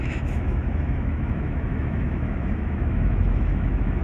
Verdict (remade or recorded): remade